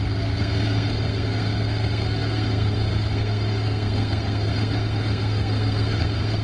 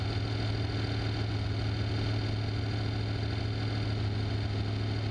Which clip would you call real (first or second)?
second